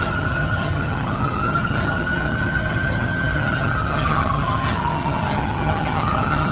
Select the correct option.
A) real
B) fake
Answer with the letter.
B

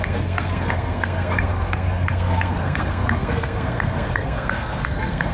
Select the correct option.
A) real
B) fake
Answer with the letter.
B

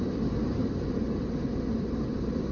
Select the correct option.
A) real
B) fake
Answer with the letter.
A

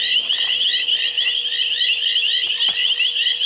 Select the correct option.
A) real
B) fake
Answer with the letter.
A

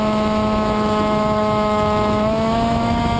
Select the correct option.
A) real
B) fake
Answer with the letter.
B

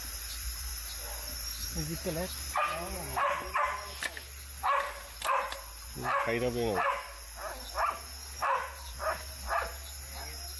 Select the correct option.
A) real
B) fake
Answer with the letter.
A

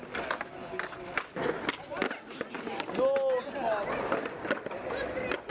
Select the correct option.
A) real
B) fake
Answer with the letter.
A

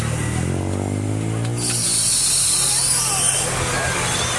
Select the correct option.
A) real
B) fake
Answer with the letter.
A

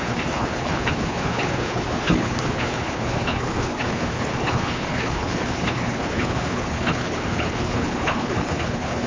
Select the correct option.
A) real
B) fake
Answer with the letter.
B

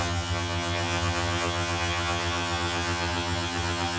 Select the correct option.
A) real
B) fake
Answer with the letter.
B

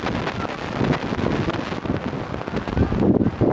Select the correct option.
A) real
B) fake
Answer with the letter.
A